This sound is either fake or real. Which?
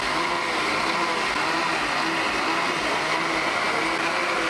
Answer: real